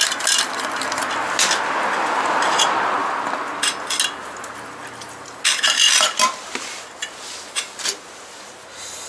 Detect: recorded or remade recorded